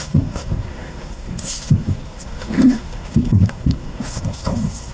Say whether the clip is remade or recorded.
remade